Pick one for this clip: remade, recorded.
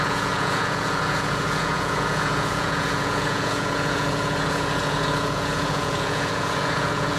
remade